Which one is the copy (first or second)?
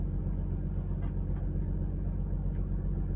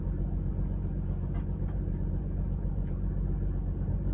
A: second